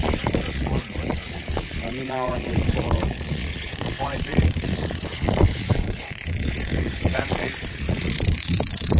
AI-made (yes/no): yes